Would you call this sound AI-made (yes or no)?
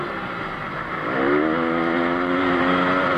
no